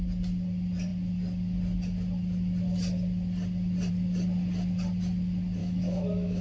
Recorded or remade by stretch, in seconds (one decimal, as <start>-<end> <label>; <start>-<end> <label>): 0.0-5.6 recorded; 5.6-6.4 remade